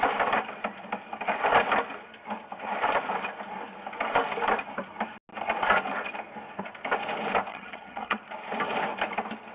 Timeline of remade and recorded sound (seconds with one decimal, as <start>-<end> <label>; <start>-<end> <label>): 0.0-7.5 recorded; 7.5-8.2 remade; 8.2-9.5 recorded